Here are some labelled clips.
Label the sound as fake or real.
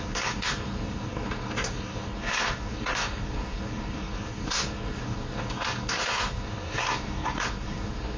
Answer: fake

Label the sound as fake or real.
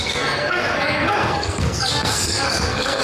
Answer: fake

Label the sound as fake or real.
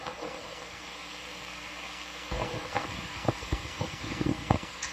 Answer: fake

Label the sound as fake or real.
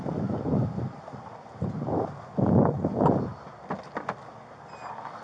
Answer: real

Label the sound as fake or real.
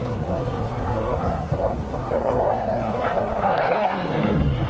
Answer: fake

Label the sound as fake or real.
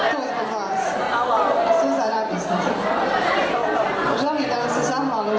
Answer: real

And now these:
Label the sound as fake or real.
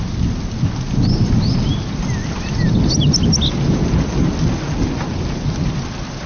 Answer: real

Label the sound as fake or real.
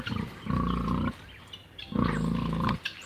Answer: real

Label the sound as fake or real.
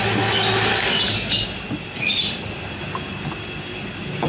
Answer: real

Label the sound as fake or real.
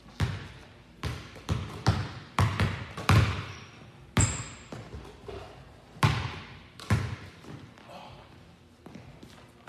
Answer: real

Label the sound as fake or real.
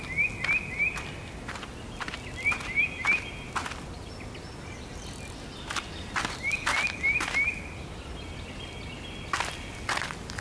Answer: real